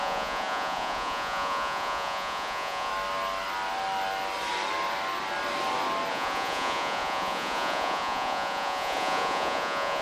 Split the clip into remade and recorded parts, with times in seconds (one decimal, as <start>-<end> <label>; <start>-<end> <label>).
0.0-2.9 remade; 2.9-6.1 recorded; 6.1-10.0 remade